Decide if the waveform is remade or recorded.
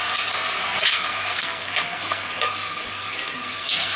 remade